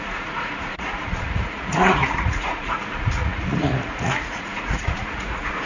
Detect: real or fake fake